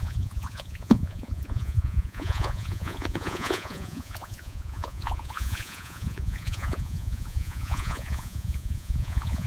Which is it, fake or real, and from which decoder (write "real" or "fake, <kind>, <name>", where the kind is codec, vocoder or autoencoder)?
fake, vocoder, Vocos